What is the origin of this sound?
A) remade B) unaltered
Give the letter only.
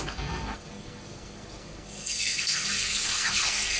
A